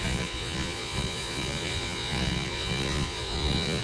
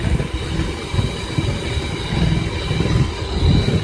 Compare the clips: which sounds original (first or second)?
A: second